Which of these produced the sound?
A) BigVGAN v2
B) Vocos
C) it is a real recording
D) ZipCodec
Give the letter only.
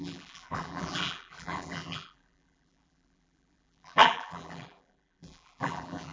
A